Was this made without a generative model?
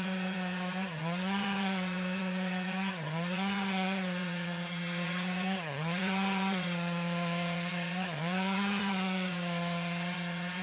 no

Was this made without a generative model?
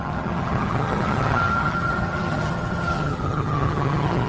no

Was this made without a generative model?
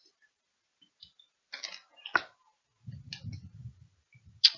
yes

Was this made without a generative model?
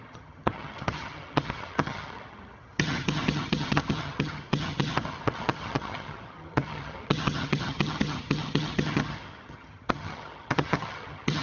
no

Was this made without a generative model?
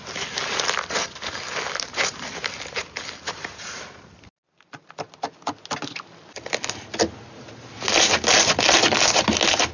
yes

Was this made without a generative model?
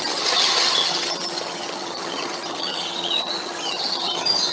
no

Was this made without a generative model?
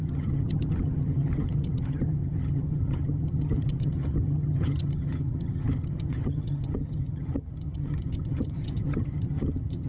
no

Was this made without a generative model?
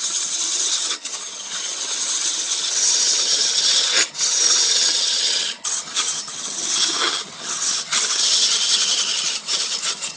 no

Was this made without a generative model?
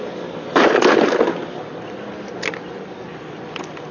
yes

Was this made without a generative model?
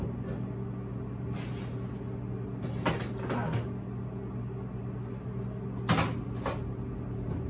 yes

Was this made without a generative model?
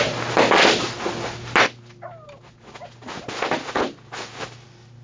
yes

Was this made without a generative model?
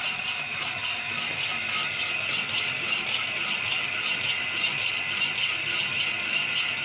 yes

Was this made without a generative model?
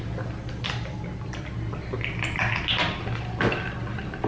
yes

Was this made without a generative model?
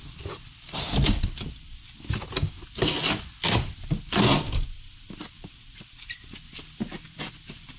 yes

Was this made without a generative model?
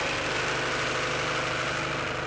yes